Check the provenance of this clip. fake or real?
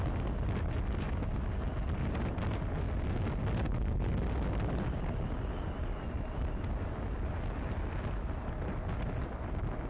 real